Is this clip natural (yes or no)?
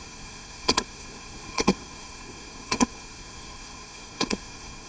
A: no